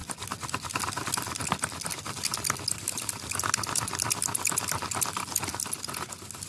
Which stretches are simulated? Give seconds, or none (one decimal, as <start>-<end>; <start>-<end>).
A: none